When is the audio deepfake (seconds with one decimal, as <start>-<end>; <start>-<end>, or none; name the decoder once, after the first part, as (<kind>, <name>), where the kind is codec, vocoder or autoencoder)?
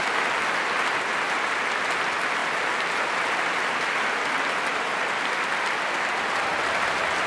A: none